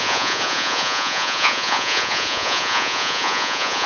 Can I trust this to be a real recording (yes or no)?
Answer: no